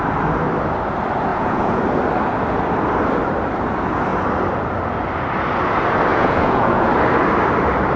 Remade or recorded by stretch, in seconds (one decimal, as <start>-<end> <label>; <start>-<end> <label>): 0.0-1.3 recorded; 1.3-1.8 remade; 1.8-6.1 recorded; 6.1-6.9 remade; 6.9-8.0 recorded